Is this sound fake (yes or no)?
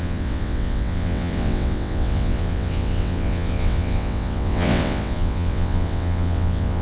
yes